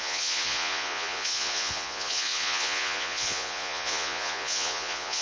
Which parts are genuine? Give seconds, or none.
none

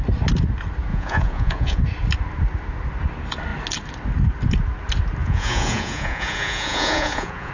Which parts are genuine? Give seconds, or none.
0.0-0.9; 1.8-5.2

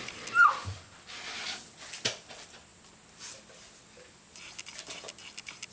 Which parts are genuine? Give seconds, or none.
0.0-5.7

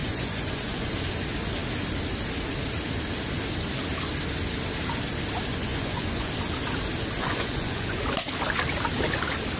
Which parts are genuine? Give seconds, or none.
0.9-5.5; 6.3-7.2; 8.0-9.6

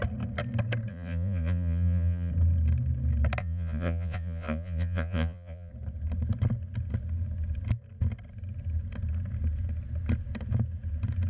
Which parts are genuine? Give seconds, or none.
0.0-0.9; 2.3-3.4; 5.7-11.3